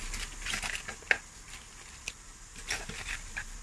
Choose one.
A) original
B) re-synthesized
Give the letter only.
A